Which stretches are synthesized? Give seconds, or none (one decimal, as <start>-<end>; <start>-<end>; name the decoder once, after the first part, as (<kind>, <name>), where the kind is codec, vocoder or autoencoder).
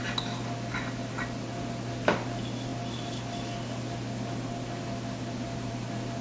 none